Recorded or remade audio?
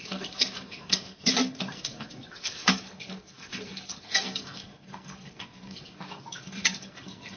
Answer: remade